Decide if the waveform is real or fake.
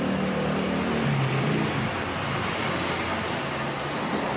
real